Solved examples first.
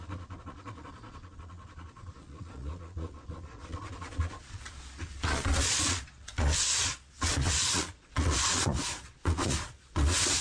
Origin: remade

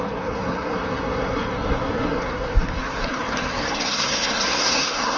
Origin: remade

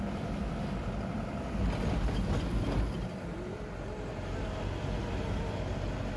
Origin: recorded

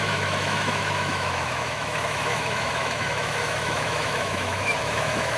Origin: remade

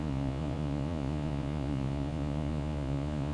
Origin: remade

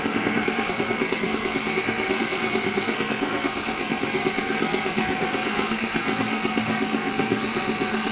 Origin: remade